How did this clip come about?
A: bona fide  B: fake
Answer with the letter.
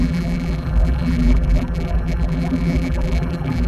B